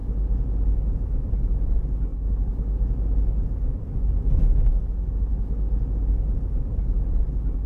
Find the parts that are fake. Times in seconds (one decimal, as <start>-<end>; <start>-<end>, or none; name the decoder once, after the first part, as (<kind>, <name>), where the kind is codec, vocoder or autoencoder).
none